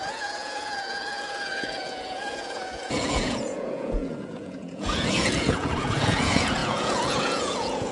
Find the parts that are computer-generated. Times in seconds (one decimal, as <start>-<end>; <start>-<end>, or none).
0.0-7.9